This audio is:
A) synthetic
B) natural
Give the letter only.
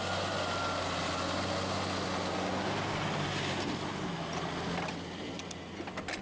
B